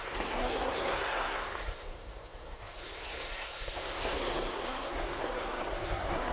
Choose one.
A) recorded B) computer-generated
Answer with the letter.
B